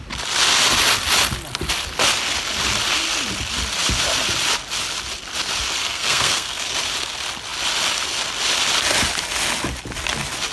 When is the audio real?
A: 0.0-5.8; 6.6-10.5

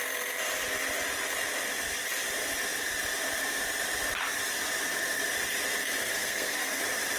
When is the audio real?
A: 0.0-6.0; 6.8-7.2

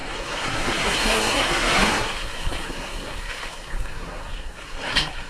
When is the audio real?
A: none

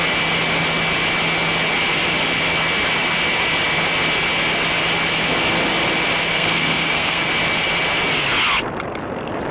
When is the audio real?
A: 0.0-6.2; 7.2-9.5

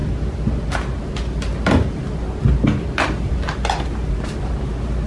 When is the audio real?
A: 0.0-5.1

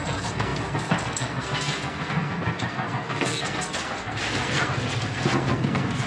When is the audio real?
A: none

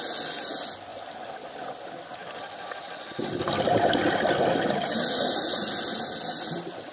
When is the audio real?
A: 0.0-6.9